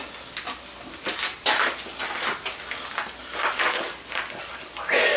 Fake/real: real